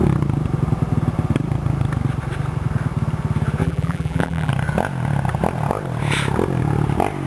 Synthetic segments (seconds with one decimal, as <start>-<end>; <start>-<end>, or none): 3.6-4.5